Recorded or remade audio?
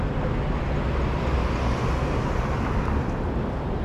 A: recorded